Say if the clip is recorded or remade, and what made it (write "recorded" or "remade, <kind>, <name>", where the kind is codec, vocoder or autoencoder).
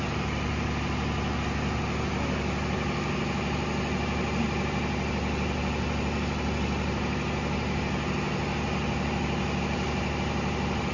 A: recorded